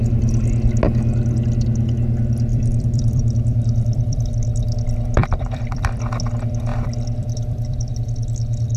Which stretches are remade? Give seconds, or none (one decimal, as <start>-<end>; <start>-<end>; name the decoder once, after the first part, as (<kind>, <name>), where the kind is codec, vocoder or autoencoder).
2.5-4.3 (vocoder, BigVGAN v2); 5.2-6.0; 6.7-7.9